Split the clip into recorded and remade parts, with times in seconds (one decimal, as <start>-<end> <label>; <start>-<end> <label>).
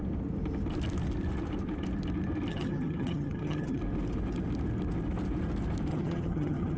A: 0.0-2.5 recorded; 2.5-3.8 remade; 3.8-5.9 recorded; 5.9-6.8 remade